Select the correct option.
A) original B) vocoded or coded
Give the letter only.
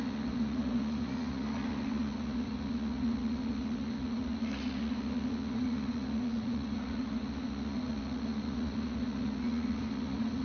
B